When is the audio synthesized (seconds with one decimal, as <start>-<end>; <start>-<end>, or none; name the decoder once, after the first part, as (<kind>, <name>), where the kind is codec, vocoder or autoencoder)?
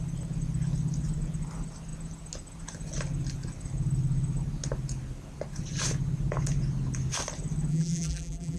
7.7-8.6 (vocoder, BigVGAN v2)